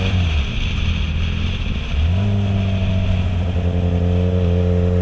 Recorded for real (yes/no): yes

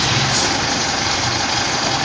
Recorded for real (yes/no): yes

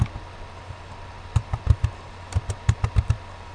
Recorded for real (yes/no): yes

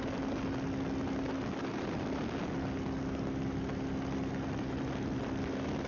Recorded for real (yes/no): yes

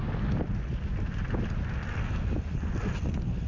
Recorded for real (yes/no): yes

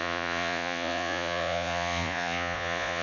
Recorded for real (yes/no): no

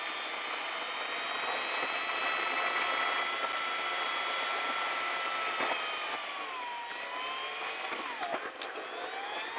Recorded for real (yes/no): yes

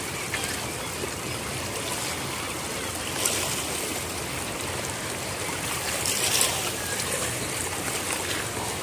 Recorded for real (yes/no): yes